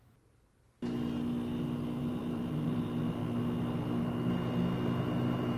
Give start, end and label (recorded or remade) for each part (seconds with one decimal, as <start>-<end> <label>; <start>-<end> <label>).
0.0-2.0 recorded; 2.0-2.8 remade; 2.8-5.6 recorded